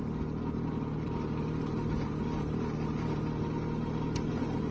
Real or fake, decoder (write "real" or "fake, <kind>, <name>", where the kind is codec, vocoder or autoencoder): real